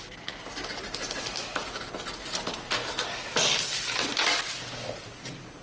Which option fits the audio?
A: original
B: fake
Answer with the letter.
A